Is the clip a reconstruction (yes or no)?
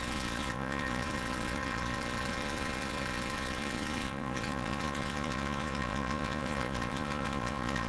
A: yes